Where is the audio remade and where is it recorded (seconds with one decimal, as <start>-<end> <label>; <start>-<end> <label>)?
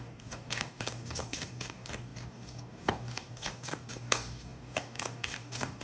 0.0-5.8 remade